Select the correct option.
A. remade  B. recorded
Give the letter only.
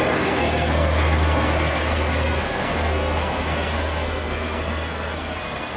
A